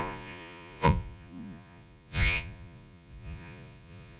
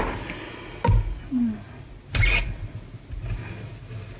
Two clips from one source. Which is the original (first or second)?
second